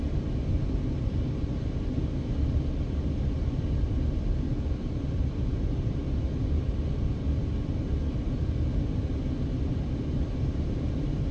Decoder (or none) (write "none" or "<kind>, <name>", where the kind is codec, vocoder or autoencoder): none